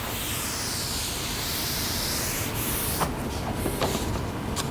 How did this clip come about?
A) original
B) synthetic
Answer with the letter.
A